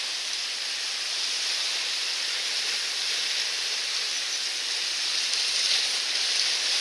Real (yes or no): yes